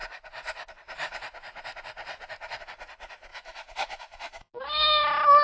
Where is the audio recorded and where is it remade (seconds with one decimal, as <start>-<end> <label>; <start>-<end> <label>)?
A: 0.0-3.3 recorded; 3.3-4.5 remade; 4.5-5.4 recorded